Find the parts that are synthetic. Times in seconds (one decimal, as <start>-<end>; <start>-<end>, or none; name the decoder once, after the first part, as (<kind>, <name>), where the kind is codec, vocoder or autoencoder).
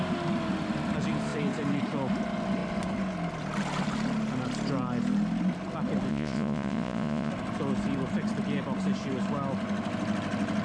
6.1-7.3 (vocoder, Vocos)